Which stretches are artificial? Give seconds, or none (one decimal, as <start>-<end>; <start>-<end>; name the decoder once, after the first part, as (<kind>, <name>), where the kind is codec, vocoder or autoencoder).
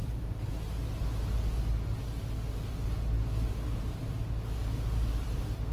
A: 0.0-0.5 (vocoder, BigVGAN v2)